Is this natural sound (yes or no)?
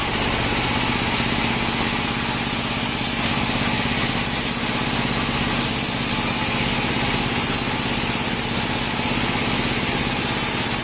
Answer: yes